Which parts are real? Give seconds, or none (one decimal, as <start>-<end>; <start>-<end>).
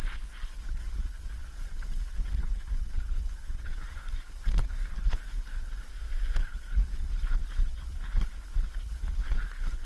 5.9-6.4